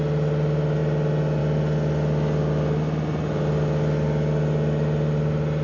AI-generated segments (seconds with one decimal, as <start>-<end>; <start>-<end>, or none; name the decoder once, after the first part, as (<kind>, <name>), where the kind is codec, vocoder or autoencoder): none